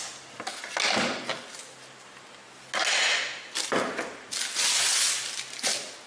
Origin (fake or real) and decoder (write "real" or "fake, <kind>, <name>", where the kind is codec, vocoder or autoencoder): real